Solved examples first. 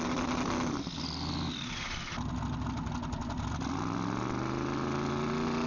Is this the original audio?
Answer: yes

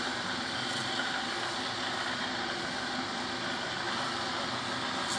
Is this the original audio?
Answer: yes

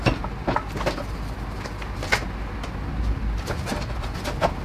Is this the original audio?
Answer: yes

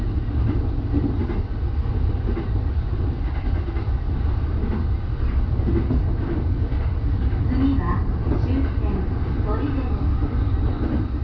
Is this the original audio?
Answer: yes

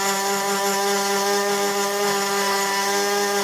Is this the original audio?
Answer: yes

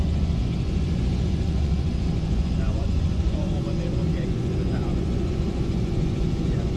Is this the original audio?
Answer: no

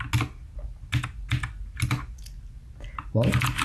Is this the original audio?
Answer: yes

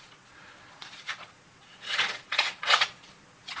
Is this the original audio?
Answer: no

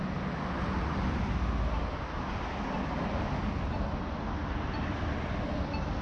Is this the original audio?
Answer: yes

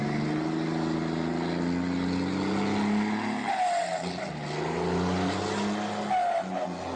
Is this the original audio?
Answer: yes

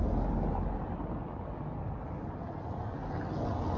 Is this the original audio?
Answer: yes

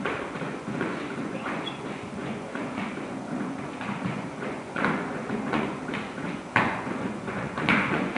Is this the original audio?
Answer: no